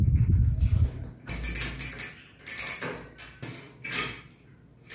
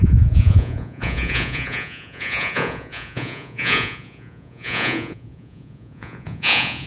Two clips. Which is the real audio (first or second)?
first